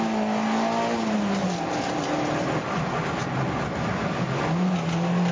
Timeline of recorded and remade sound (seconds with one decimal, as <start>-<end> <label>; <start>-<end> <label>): 0.0-1.4 recorded; 1.4-4.0 remade; 4.0-5.3 recorded